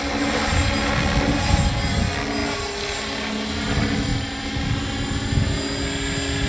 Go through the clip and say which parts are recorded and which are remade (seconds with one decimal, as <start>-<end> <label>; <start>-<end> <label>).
0.0-6.5 recorded